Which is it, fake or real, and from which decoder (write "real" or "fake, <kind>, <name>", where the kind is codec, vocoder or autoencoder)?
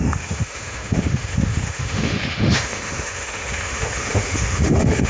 fake, autoencoder, DAC-VAE